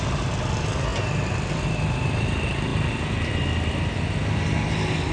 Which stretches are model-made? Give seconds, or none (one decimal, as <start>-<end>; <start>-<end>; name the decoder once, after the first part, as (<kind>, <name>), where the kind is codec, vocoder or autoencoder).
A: none

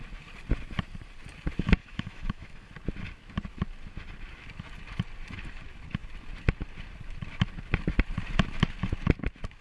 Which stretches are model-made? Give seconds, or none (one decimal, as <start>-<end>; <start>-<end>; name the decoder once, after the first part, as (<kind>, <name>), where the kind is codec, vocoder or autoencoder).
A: 1.8-2.7 (autoencoder, DAC-VAE)